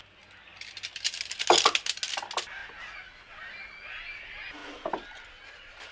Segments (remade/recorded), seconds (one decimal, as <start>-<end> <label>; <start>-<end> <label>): 0.0-5.9 recorded